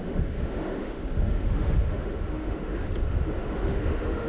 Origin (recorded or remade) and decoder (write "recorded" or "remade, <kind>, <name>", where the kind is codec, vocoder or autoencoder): remade, autoencoder, DAC-VAE